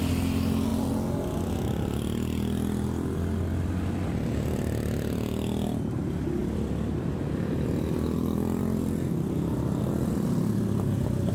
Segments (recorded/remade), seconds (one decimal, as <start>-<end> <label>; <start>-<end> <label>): 0.0-6.4 recorded; 6.4-8.6 remade; 8.6-11.3 recorded